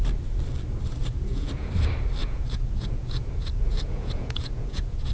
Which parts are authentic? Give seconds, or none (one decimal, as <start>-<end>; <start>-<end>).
0.0-1.0; 1.7-2.2